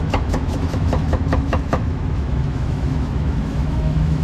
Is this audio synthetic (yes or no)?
yes